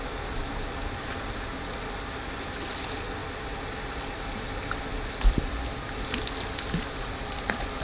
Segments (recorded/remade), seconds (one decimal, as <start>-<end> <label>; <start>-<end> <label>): 0.0-7.8 recorded